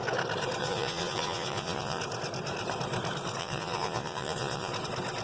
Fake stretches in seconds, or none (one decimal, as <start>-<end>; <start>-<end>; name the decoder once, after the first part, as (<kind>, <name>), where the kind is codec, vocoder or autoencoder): 0.6-2.0 (vocoder, Vocos); 3.4-4.7